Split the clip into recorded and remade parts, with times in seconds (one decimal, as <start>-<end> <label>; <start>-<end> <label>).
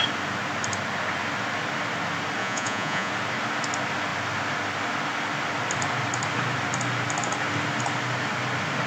0.0-2.4 recorded; 2.4-3.1 remade; 3.1-8.9 recorded